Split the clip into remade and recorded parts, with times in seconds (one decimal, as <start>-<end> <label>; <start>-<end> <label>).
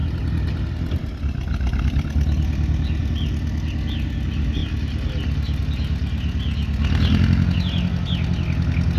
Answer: 0.0-9.0 recorded